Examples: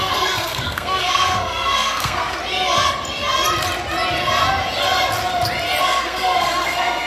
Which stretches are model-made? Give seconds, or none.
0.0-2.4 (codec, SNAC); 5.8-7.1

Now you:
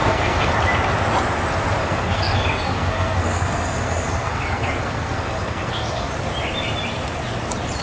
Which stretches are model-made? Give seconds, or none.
0.0-0.5 (codec, SNAC); 1.8-6.1